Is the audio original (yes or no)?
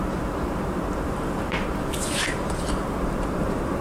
no